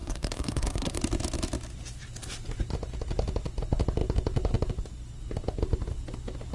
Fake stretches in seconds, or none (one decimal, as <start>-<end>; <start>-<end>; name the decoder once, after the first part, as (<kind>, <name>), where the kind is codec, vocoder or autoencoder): 0.0-1.0 (codec, SNAC)